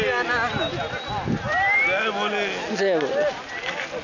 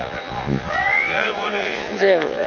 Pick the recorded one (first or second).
first